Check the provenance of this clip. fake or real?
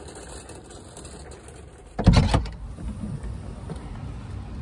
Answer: real